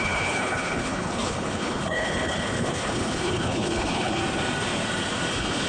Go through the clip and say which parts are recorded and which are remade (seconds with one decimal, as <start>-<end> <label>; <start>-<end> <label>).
0.0-4.2 remade; 4.2-5.3 recorded; 5.3-5.7 remade